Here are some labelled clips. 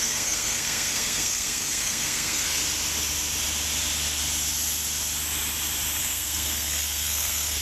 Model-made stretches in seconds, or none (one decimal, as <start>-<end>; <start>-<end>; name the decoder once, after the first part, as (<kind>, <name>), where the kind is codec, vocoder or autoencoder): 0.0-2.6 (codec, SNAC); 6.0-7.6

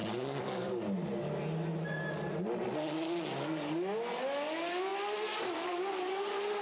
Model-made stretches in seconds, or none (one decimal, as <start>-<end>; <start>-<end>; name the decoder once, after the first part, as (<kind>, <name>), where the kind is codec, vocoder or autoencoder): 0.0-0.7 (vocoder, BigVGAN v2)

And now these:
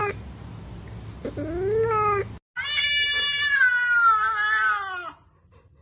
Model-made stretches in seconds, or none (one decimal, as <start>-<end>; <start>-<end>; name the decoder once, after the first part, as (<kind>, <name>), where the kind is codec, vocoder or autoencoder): 0.0-0.6 (vocoder, BigVGAN v2)

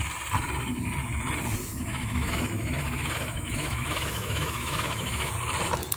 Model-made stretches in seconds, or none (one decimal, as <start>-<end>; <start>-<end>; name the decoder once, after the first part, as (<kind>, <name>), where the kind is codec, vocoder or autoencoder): 1.7-5.3 (autoencoder, DAC-VAE)

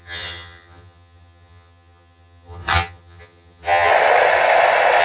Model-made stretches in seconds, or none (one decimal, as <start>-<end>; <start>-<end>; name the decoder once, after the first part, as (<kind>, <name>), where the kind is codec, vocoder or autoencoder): 0.0-3.9 (vocoder, HiFi-GAN)

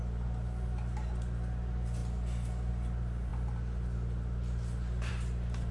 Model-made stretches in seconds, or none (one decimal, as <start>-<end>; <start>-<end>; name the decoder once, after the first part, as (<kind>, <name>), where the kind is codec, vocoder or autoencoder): none

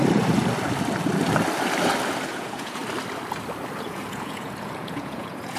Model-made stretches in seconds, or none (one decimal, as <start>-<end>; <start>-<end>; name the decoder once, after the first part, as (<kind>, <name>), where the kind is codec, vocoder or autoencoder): 2.3-2.8 (vocoder, Vocos); 3.8-5.6